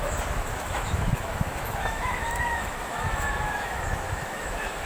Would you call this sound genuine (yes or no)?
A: no